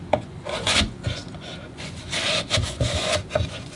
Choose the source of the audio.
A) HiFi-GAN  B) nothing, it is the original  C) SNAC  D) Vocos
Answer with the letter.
D